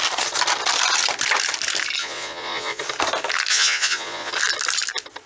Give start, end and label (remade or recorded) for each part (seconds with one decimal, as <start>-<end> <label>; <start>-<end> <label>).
0.0-2.0 recorded; 2.0-2.8 remade; 2.8-3.5 recorded; 3.5-4.3 remade; 4.3-5.3 recorded